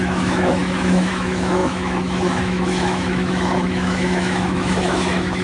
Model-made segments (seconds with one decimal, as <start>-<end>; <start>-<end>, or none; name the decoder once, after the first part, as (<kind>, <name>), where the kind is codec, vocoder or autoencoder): 0.0-5.4 (autoencoder, DAC-VAE)